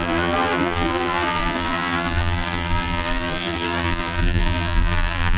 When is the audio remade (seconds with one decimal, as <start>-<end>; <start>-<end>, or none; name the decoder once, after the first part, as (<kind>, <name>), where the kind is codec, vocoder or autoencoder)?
0.0-5.4 (vocoder, BigVGAN v2)